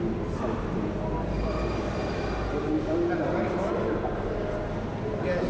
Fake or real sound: real